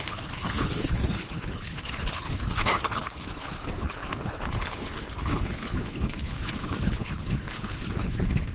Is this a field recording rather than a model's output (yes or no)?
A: no